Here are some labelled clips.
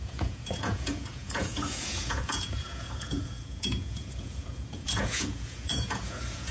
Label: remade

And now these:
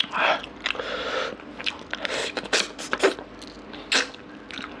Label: recorded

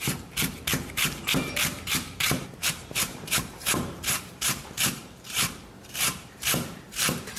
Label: remade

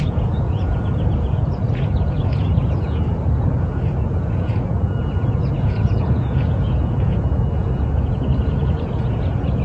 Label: remade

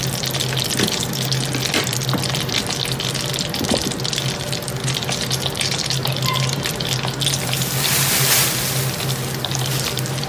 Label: recorded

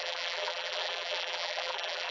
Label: remade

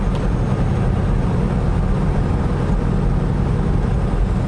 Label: recorded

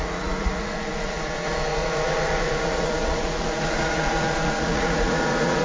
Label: remade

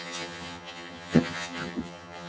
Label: remade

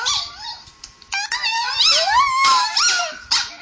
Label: recorded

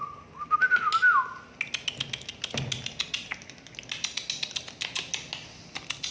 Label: recorded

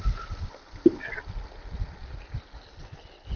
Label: recorded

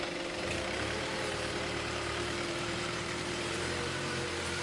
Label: remade